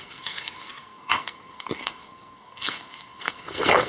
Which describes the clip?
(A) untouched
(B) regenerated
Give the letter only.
B